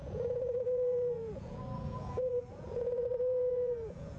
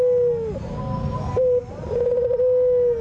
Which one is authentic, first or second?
second